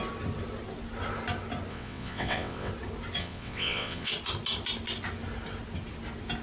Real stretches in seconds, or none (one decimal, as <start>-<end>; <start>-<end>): 0.0-1.7; 2.7-3.2; 4.1-6.4